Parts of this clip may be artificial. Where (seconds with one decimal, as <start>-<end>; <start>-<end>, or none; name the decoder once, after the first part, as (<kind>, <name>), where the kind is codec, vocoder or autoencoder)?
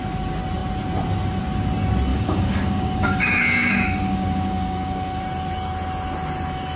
2.1-5.2 (codec, DAC)